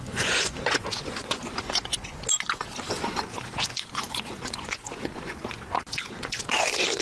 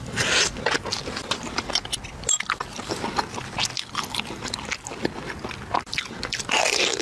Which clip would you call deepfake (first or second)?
first